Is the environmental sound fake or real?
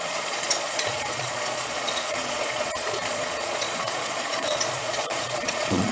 fake